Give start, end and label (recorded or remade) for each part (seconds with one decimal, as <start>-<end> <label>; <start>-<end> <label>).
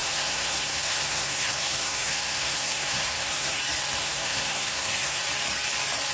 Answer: 0.0-3.6 remade; 3.6-4.0 recorded; 4.0-5.2 remade; 5.2-6.1 recorded